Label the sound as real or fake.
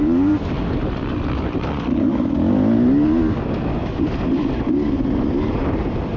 real